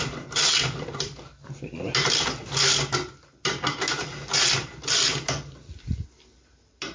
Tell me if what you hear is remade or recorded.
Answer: recorded